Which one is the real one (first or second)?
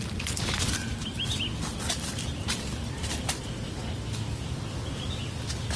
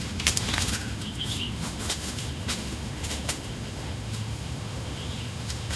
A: first